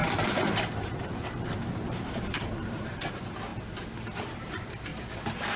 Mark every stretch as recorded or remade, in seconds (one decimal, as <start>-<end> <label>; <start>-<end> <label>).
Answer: 0.0-3.5 remade; 3.5-4.2 recorded; 4.2-4.9 remade; 4.9-5.6 recorded